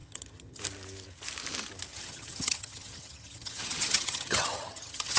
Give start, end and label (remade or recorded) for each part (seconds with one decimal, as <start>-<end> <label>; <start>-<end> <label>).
0.0-0.6 remade; 0.6-1.9 recorded; 1.9-5.2 remade